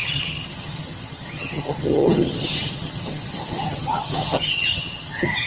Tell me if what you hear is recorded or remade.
remade